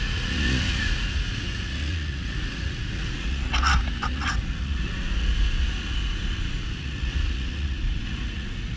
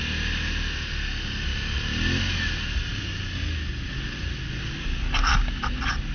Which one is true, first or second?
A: second